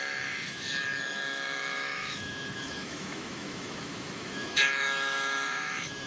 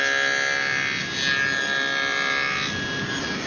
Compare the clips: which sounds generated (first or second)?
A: first